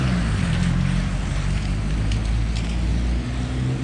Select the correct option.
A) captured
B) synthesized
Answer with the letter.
A